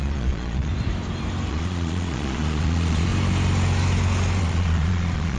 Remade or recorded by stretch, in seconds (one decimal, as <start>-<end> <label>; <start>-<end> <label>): 0.0-0.7 remade; 0.7-1.5 recorded; 1.5-3.1 remade; 3.1-4.4 recorded; 4.4-5.4 remade